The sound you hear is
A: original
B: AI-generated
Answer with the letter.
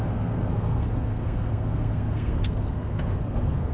B